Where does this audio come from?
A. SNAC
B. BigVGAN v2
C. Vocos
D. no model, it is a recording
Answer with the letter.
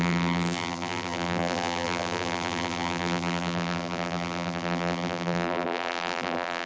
B